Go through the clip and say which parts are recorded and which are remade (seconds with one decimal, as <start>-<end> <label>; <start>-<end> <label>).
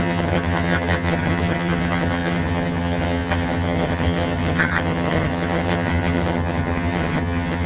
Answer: 0.0-7.7 remade